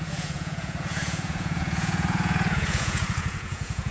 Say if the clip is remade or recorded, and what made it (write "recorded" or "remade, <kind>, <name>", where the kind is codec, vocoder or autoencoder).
remade, vocoder, Vocos